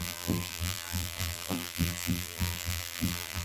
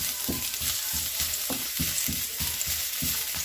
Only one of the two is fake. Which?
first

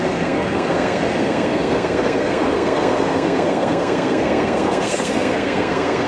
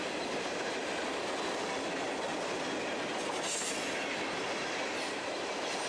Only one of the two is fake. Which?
first